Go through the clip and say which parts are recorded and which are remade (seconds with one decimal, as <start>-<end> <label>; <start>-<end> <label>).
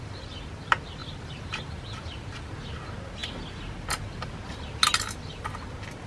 0.0-1.0 recorded; 1.0-2.5 remade; 2.5-6.1 recorded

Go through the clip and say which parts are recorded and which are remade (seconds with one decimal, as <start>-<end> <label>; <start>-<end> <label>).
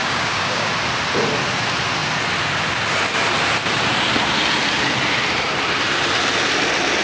0.0-0.7 remade; 0.7-7.0 recorded